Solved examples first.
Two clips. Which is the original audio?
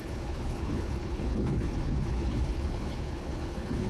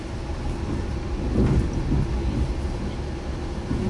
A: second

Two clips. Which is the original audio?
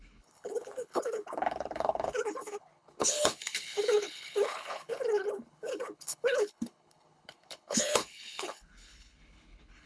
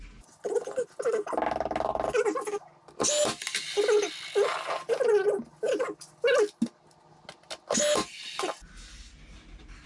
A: second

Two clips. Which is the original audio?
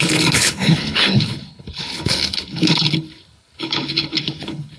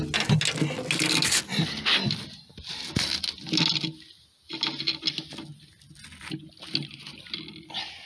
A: second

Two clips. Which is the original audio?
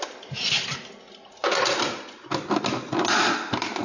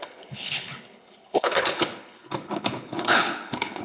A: first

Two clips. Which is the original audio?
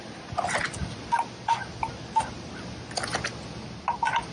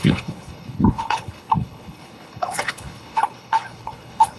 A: first